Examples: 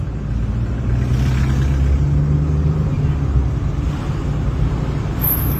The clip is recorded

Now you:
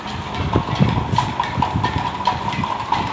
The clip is recorded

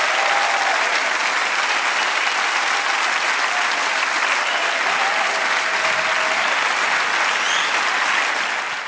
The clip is recorded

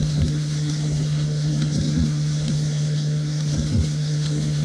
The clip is remade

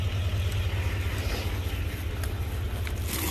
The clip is recorded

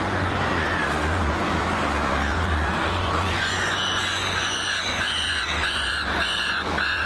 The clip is remade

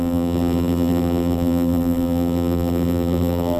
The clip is remade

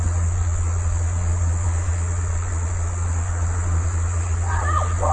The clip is remade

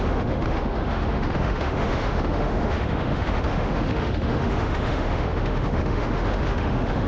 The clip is remade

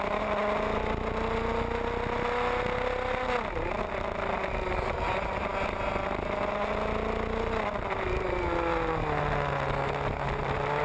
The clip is recorded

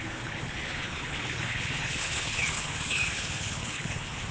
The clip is remade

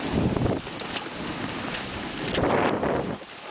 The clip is recorded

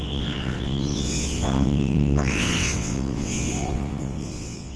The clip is remade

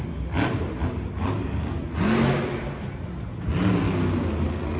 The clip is recorded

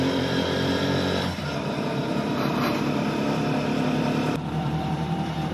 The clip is remade